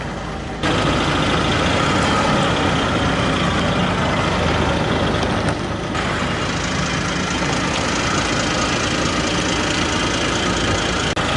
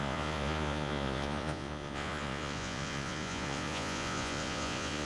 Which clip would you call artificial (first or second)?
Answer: second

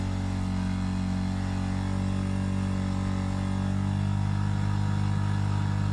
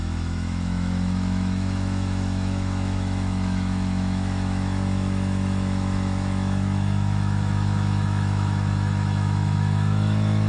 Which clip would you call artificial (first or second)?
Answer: second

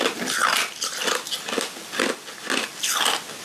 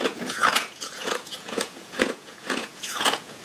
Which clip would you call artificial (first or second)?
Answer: second